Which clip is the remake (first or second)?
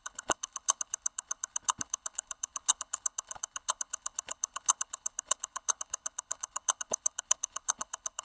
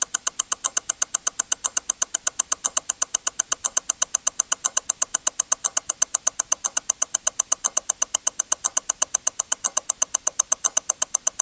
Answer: first